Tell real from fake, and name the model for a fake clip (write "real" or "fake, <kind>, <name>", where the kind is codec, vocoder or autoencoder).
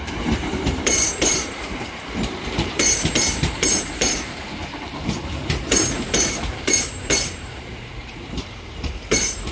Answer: fake, vocoder, BigVGAN v2